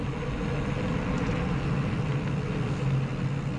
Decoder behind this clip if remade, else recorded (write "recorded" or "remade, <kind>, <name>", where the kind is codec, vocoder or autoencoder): recorded